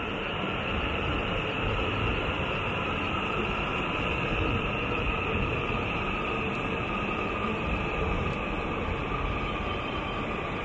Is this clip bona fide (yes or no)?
no